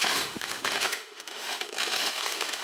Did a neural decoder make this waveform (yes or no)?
yes